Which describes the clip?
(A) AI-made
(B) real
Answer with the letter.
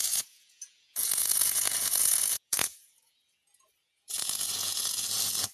A